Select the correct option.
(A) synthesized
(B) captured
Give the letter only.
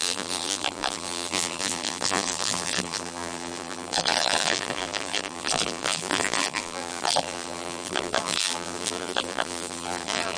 A